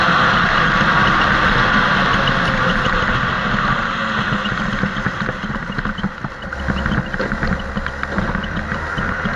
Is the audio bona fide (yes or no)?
yes